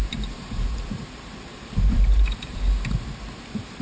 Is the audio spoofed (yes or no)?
yes